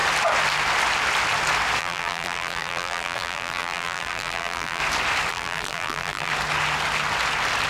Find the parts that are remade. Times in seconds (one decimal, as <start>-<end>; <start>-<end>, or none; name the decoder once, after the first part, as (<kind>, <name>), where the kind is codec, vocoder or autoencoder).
1.8-4.8 (vocoder, BigVGAN v2); 5.3-6.3